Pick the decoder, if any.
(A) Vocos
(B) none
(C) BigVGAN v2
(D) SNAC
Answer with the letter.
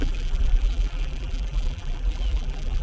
C